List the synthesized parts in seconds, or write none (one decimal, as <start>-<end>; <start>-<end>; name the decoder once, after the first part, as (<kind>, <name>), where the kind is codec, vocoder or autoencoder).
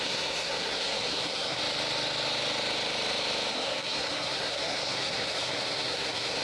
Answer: 0.0-1.6 (codec, SNAC); 3.5-6.4